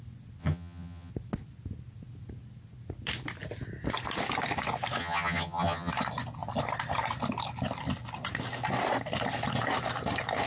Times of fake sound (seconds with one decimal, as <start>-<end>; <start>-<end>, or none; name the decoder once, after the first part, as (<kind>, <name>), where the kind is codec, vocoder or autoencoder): 0.4-1.1 (vocoder, HiFi-GAN); 5.0-5.9